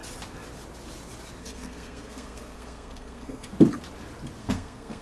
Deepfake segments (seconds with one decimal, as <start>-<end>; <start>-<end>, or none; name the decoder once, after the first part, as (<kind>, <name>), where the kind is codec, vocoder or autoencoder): 1.4-3.5 (codec, SNAC); 4.4-5.0